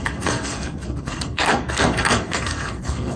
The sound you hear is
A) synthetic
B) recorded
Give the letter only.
A